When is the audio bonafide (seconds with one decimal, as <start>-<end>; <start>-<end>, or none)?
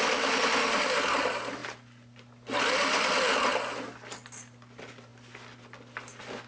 0.0-6.5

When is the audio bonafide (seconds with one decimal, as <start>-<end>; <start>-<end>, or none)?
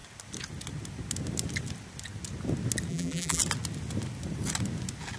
0.0-2.9; 3.4-5.2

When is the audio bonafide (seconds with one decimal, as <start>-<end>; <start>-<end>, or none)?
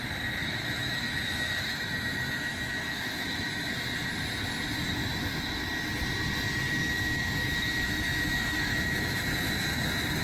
0.0-0.4; 3.7-6.8; 9.2-10.2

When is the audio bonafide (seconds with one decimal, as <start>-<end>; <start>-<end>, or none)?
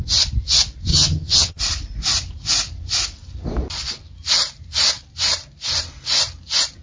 0.0-0.9; 1.6-6.8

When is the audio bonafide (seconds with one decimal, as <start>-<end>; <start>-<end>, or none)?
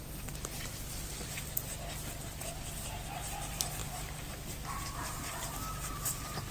0.0-6.5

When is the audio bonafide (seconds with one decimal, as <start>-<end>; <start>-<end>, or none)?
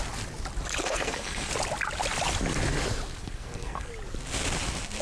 0.0-0.8; 1.5-3.2; 3.9-5.0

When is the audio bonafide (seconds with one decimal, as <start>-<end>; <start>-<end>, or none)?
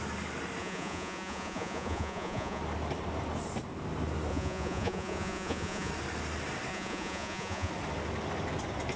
0.0-0.6; 2.6-4.3; 5.9-6.7; 7.7-9.0